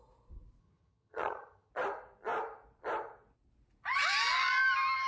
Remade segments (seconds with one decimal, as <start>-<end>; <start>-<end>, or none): 0.6-1.7